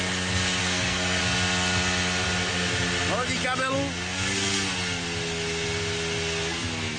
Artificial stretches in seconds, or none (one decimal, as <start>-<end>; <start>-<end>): 0.6-1.2